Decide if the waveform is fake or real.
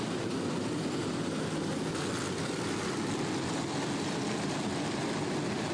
real